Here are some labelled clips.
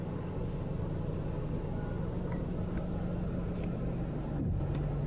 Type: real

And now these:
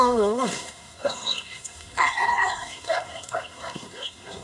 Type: fake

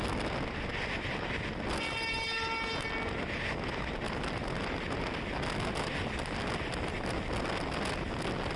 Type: real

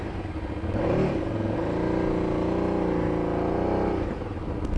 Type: real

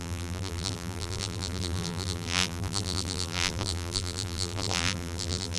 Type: fake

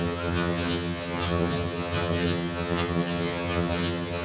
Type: fake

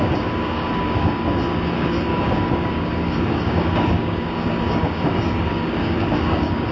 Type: fake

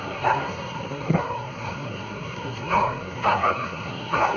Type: fake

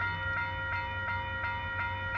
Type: real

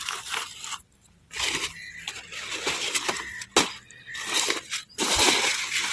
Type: real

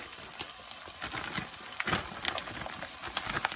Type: real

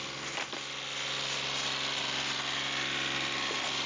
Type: real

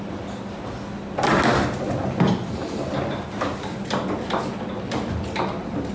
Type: real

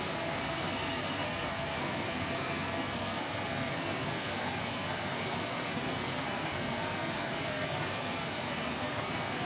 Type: fake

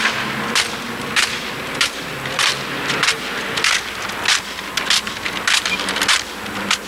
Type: real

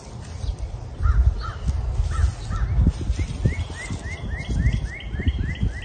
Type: real